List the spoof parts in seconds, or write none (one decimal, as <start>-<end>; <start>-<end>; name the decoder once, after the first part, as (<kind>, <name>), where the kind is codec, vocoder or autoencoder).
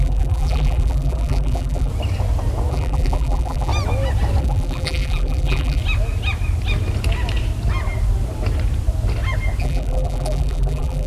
0.0-1.9 (vocoder, BigVGAN v2); 2.7-3.7; 4.4-5.8; 9.6-11.1